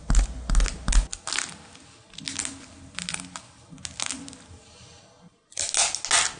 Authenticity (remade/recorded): recorded